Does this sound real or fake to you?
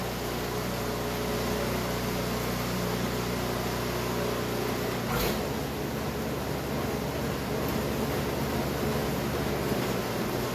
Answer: real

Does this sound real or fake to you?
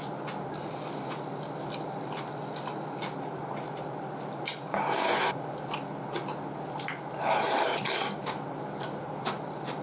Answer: real